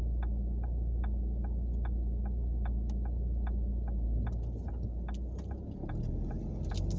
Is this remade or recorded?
recorded